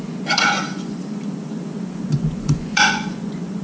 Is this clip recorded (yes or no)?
no